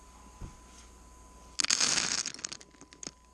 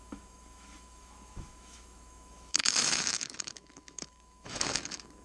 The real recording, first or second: first